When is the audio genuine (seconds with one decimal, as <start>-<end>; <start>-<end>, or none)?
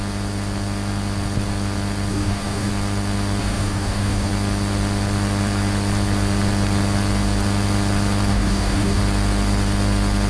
0.0-2.1; 2.7-3.4; 4.3-8.3; 9.0-10.3